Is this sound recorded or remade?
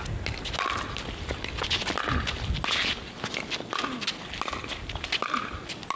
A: recorded